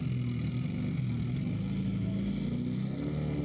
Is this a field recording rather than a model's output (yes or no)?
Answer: yes